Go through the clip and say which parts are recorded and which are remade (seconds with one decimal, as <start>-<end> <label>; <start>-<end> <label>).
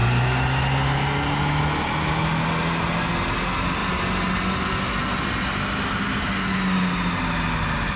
0.0-8.0 recorded